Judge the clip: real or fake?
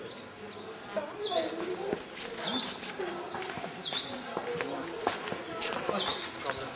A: real